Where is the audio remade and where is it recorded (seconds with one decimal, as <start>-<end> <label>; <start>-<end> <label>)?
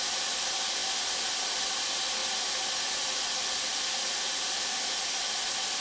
0.0-5.8 recorded